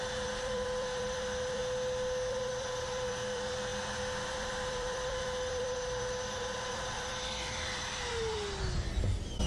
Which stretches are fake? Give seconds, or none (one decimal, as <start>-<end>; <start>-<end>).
0.0-1.6; 2.3-3.7; 4.3-9.5